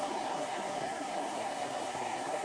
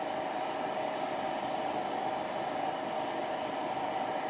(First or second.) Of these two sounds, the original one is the second